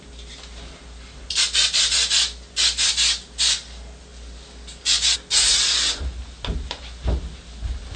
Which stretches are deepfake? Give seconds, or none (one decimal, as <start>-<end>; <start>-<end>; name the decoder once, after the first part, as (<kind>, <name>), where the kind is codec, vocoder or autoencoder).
none